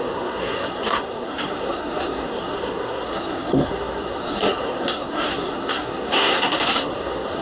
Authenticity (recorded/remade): remade